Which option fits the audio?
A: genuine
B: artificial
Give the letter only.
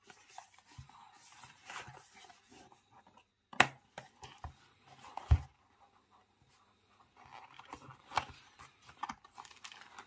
A